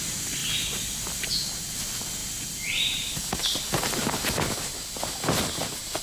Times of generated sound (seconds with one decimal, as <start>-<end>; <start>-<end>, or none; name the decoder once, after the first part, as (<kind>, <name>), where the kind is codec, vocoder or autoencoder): 0.4-1.6 (vocoder, BigVGAN v2); 2.2-3.8